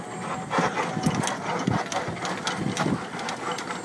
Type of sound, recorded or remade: recorded